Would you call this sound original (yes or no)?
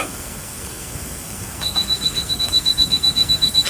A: no